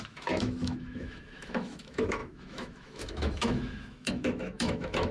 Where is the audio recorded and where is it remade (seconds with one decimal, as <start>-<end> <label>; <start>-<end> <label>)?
0.0-5.1 remade